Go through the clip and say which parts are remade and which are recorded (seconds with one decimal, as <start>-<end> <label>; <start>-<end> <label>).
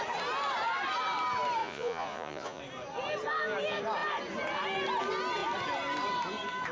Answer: 0.0-1.6 recorded; 1.6-2.6 remade; 2.6-6.7 recorded